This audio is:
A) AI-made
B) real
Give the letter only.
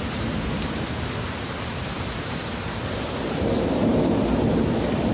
A